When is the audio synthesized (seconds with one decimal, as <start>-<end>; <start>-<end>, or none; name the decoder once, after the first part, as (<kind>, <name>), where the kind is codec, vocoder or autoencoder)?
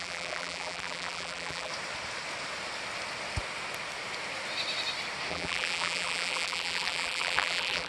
0.0-1.7 (vocoder, BigVGAN v2); 5.3-7.9